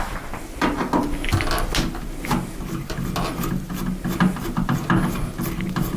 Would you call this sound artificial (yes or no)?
no